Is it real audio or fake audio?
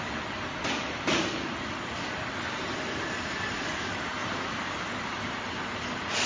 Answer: real